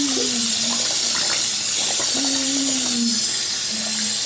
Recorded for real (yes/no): yes